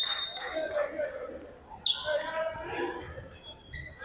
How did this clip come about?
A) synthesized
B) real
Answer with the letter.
B